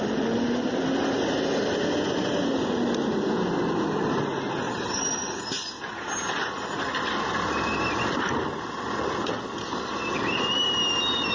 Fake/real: real